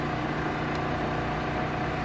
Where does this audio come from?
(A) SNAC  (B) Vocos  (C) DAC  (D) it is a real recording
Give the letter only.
D